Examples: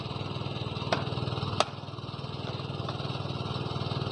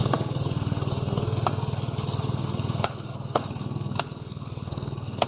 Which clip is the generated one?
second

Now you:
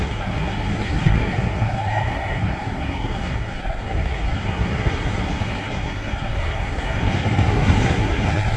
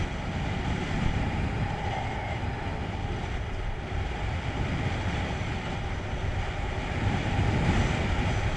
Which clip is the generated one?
first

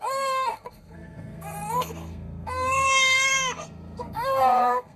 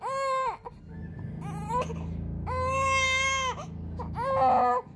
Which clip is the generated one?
first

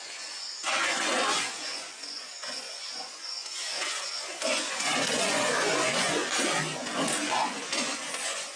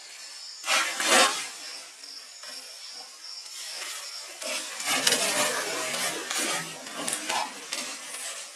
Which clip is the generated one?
first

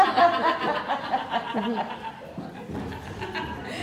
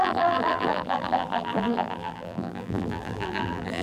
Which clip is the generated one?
second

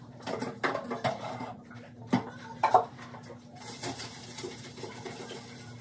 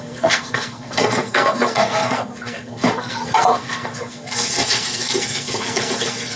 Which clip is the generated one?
second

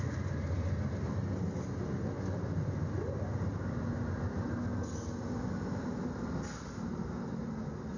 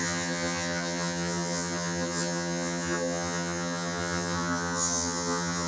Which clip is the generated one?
second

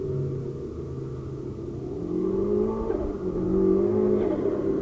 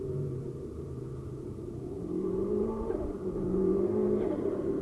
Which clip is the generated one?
second